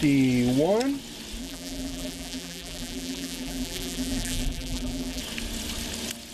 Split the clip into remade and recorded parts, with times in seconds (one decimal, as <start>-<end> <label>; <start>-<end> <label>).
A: 0.0-1.4 recorded; 1.4-5.2 remade; 5.2-6.3 recorded